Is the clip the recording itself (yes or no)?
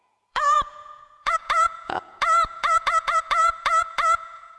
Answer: no